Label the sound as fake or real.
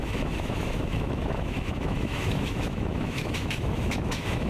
fake